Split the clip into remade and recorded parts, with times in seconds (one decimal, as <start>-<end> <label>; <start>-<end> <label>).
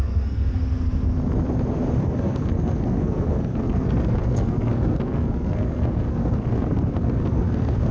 0.0-0.6 remade; 0.6-2.0 recorded; 2.0-7.9 remade